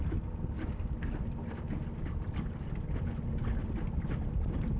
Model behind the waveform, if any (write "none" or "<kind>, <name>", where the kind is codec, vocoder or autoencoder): none